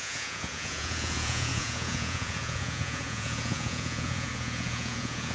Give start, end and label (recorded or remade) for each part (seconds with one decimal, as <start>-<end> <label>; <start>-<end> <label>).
0.0-5.3 remade